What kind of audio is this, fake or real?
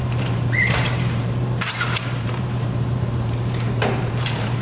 fake